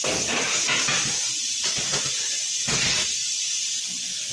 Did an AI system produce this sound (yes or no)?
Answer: no